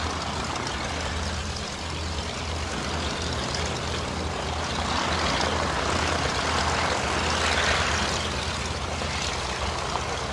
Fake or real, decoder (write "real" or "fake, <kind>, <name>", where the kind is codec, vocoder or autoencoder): real